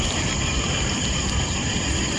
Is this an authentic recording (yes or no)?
yes